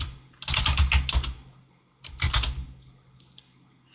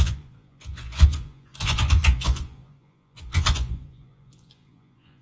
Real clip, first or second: first